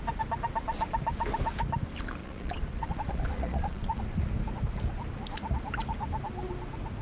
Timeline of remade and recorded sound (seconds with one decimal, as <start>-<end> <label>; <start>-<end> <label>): 0.0-2.2 recorded; 2.2-4.0 remade; 4.0-7.0 recorded

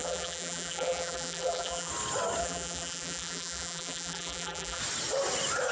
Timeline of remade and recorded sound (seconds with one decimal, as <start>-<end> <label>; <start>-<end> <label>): 0.0-1.9 remade; 1.9-2.4 recorded; 2.4-4.8 remade; 4.8-5.7 recorded

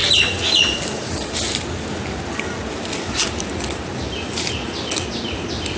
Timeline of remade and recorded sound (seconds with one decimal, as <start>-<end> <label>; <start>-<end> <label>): 0.0-5.8 recorded

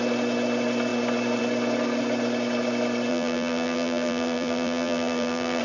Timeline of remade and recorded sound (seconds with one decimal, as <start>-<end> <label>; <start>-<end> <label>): 0.0-3.1 recorded; 3.1-5.6 remade

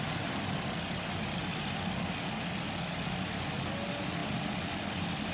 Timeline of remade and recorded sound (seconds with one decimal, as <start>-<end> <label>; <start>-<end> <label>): 0.0-5.3 recorded

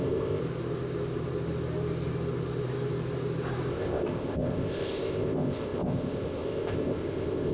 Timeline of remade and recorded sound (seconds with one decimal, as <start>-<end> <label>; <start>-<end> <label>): 0.0-0.4 remade; 0.4-3.7 recorded; 3.7-7.5 remade